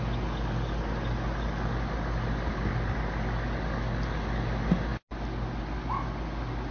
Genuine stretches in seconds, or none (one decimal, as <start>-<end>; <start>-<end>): 0.0-6.7